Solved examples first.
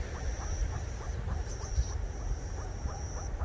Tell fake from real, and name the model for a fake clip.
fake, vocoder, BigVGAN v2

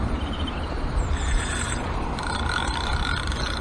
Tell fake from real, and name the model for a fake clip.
fake, vocoder, BigVGAN v2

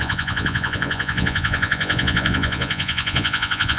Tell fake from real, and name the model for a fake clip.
fake, vocoder, Vocos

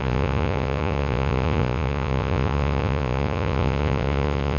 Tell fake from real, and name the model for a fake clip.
fake, vocoder, Vocos